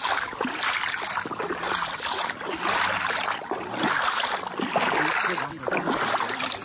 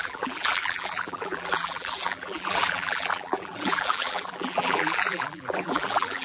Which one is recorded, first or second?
first